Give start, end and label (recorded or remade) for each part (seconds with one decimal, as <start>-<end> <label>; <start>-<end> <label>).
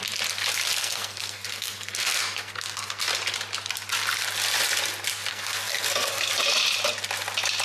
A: 0.0-0.8 recorded; 0.8-3.0 remade; 3.0-5.3 recorded; 5.3-6.3 remade; 6.3-7.6 recorded